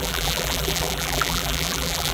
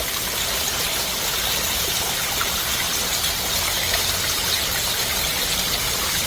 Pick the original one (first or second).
second